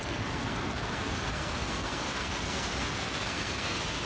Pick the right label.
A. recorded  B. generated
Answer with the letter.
B